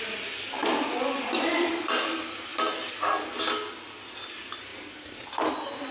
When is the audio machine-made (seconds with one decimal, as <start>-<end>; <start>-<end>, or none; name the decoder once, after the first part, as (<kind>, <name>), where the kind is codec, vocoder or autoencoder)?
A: 0.6-2.0 (vocoder, BigVGAN v2); 2.5-3.4; 4.7-5.5